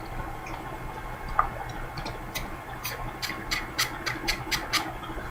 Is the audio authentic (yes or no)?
no